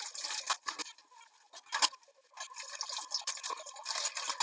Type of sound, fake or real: real